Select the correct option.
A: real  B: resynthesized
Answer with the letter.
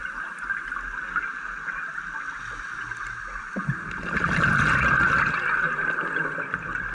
A